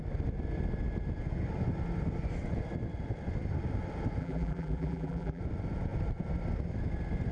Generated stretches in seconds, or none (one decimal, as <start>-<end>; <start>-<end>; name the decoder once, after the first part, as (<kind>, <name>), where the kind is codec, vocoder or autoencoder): 4.2-5.4 (vocoder, BigVGAN v2)

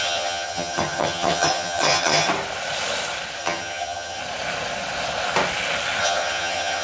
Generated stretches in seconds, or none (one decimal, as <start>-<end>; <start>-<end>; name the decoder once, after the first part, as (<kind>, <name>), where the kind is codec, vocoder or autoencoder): 0.0-2.3 (vocoder, HiFi-GAN); 3.4-4.2; 6.0-6.8

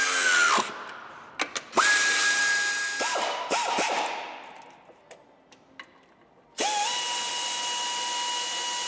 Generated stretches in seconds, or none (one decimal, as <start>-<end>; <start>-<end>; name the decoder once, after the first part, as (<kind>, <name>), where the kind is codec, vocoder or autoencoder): none

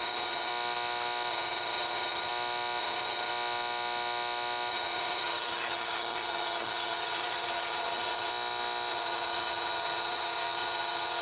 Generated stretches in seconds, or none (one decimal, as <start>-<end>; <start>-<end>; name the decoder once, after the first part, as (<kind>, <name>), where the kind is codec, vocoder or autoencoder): 0.0-0.5 (vocoder, HiFi-GAN); 1.3-2.3; 2.8-3.3; 4.7-8.3; 8.9-11.2

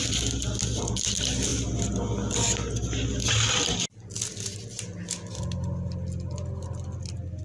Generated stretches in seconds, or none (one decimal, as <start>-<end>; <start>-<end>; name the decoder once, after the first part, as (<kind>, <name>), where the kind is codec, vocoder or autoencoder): none